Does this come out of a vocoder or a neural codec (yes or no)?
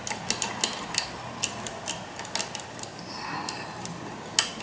no